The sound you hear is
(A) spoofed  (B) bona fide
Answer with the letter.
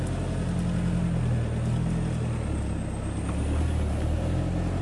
B